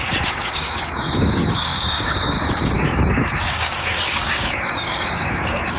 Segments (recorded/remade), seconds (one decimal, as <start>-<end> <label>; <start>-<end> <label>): 0.0-5.8 remade